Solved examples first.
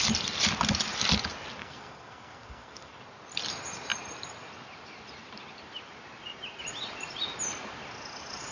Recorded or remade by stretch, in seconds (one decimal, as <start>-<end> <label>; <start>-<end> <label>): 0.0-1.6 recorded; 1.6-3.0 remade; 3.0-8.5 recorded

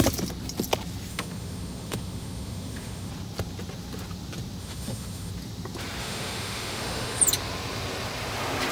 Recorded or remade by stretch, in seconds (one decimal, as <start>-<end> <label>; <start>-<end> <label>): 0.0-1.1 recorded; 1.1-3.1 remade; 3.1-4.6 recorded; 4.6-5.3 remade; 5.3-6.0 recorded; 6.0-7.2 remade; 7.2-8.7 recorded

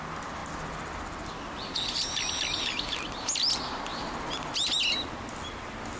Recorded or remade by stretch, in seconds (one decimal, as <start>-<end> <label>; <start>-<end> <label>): 0.0-3.9 recorded; 3.9-4.8 remade; 4.8-6.0 recorded

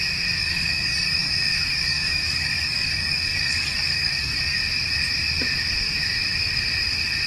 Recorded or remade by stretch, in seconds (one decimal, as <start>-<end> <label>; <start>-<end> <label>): 0.0-0.4 recorded; 0.4-4.6 remade; 4.6-7.3 recorded